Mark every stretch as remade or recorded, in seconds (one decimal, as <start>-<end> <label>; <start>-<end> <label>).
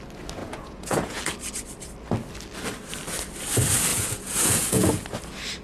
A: 0.0-0.4 recorded; 0.4-1.2 remade; 1.2-3.9 recorded; 3.9-4.9 remade; 4.9-5.6 recorded